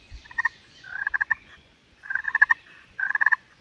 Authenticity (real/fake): fake